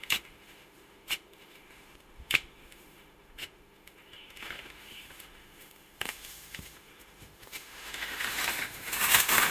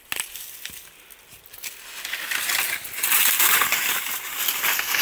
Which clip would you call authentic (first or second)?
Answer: second